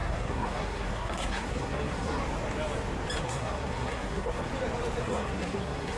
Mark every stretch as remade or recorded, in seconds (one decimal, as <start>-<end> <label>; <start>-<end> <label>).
0.0-2.2 remade; 2.2-3.2 recorded; 3.2-4.5 remade; 4.5-5.0 recorded; 5.0-6.0 remade